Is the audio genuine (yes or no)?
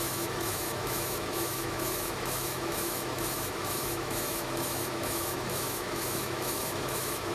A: no